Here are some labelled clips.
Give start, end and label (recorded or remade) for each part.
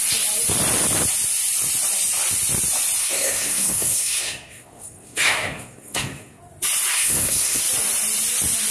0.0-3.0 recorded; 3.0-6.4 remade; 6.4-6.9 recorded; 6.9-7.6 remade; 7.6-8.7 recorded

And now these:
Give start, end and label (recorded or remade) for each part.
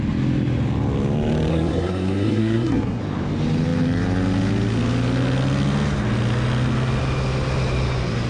0.0-1.5 recorded; 1.5-3.0 remade; 3.0-8.3 recorded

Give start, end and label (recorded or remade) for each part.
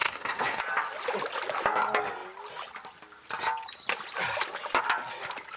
0.0-0.6 remade; 0.6-5.6 recorded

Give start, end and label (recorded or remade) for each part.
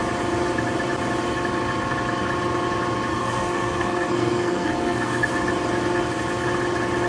0.0-3.1 recorded; 3.1-5.3 remade; 5.3-7.1 recorded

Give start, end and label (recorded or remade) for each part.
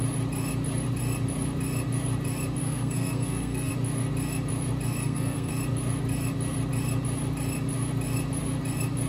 0.0-2.6 recorded; 2.6-3.7 remade; 3.7-5.0 recorded; 5.0-5.5 remade; 5.5-9.1 recorded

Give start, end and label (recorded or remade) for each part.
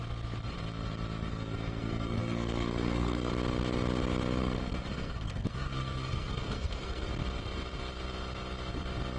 0.0-1.3 recorded; 1.3-3.3 remade; 3.3-4.4 recorded; 4.4-7.1 remade; 7.1-9.2 recorded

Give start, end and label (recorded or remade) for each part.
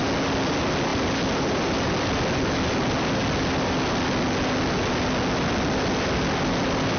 0.0-7.0 recorded